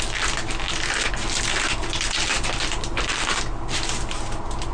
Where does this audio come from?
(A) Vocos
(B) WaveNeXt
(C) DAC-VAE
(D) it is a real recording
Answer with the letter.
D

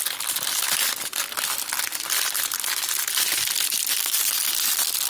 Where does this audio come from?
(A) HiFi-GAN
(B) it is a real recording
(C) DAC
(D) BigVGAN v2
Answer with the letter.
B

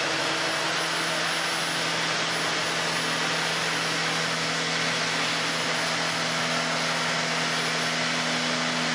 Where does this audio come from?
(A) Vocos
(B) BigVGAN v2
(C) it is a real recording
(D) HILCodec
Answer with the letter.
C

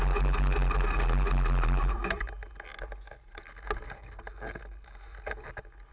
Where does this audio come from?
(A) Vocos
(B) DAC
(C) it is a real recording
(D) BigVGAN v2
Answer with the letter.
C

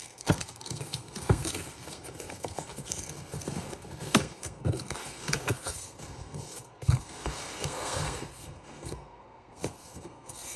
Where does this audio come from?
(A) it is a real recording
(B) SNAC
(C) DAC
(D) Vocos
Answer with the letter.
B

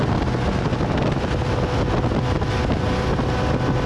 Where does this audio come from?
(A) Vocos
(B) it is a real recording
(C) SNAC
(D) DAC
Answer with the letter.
B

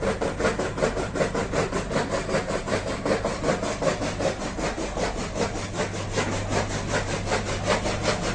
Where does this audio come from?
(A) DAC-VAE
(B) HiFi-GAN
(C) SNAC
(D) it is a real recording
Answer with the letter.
D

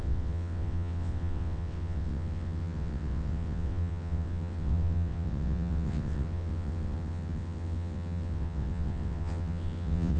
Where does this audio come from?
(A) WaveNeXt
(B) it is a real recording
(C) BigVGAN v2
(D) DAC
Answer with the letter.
A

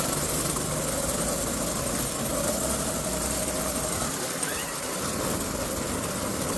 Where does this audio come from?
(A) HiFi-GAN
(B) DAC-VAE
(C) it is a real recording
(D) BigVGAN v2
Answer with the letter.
C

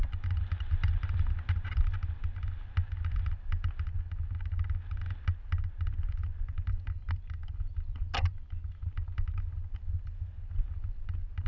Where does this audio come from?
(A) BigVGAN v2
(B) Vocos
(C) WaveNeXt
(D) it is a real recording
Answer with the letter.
D